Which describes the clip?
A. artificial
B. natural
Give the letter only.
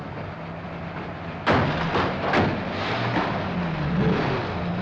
B